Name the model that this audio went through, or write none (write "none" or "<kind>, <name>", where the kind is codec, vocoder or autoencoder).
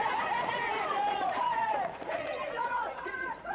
vocoder, Vocos